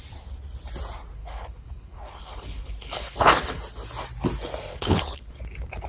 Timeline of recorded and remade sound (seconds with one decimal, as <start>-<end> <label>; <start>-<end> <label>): 0.0-1.2 recorded; 1.2-3.6 remade; 3.6-4.7 recorded; 4.7-5.4 remade; 5.4-5.9 recorded